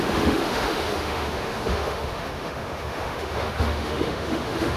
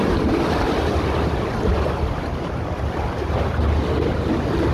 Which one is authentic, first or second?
second